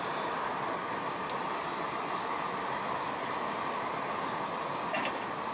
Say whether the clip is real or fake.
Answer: real